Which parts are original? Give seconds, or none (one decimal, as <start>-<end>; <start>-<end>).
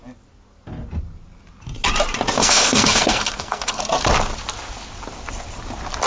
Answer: 0.0-2.4; 3.8-6.1